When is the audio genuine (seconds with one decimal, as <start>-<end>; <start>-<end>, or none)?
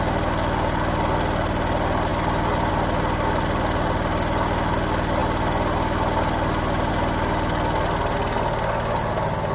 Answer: 0.0-2.1; 2.7-9.5